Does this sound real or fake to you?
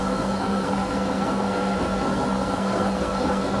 fake